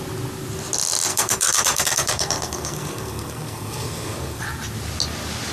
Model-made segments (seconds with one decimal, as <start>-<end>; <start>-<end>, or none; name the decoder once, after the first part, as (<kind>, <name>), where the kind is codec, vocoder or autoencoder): 1.1-4.4 (codec, SNAC)